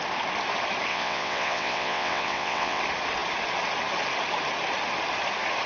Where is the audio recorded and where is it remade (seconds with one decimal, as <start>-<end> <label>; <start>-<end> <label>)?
0.0-0.9 recorded; 0.9-2.8 remade; 2.8-5.7 recorded